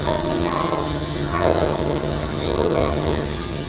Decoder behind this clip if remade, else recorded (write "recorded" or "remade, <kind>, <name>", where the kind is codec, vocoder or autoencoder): remade, vocoder, HiFi-GAN